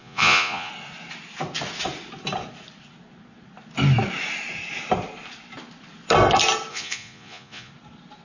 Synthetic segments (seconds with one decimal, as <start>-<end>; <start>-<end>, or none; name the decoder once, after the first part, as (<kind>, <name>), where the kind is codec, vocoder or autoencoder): 0.0-0.7 (vocoder, Vocos); 6.7-7.7